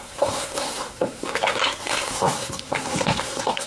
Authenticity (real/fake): fake